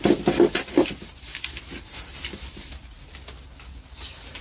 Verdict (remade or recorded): recorded